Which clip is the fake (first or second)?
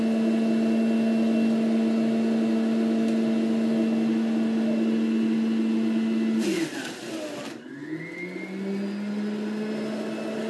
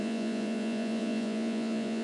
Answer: second